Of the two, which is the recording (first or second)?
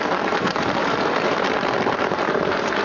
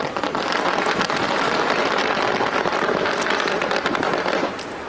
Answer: second